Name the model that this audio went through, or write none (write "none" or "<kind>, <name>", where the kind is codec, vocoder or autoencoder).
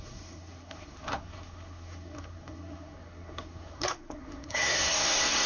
codec, SNAC